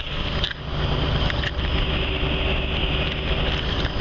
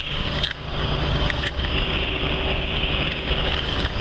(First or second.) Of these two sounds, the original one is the first